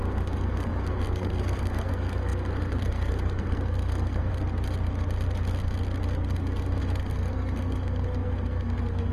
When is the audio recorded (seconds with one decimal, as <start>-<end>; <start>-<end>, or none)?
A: 4.3-6.4